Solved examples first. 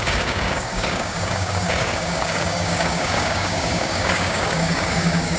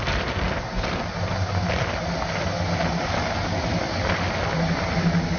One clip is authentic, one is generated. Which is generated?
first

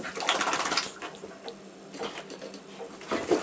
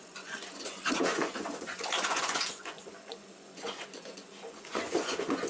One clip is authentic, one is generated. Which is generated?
second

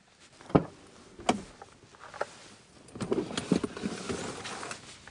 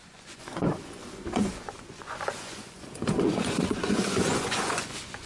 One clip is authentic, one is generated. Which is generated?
second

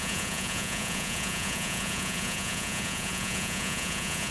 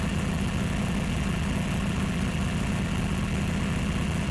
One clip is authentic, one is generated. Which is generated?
first